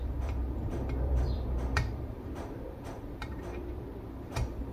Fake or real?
fake